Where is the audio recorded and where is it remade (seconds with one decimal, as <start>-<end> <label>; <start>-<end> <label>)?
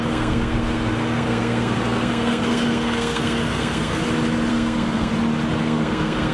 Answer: 0.0-4.0 remade; 4.0-4.5 recorded; 4.5-5.1 remade; 5.1-5.6 recorded; 5.6-6.3 remade